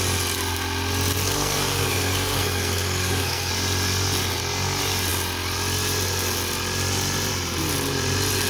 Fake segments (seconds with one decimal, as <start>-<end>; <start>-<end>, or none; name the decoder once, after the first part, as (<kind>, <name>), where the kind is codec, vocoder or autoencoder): 1.2-3.5 (codec, SNAC)